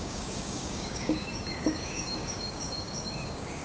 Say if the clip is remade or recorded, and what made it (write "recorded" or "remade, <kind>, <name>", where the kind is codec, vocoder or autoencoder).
remade, codec, DAC